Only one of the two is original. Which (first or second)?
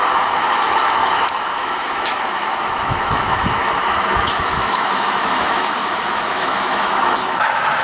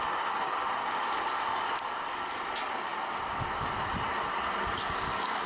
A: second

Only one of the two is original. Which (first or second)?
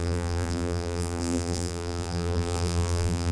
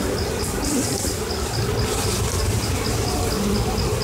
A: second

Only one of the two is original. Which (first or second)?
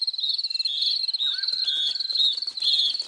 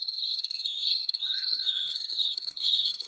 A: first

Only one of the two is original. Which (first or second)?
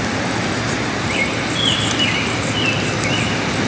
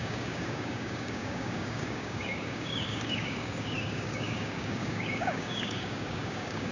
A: first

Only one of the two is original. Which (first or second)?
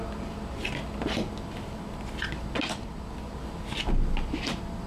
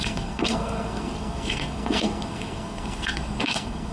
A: first